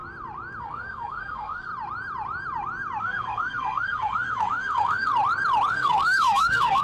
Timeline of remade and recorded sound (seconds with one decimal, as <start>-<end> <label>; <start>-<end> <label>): 0.0-0.6 recorded; 0.6-1.7 remade; 1.7-3.0 recorded; 3.0-5.1 remade; 5.1-5.7 recorded; 5.7-6.8 remade